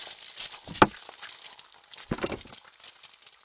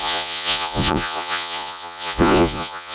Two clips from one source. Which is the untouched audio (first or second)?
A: first